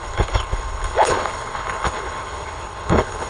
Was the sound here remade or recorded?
remade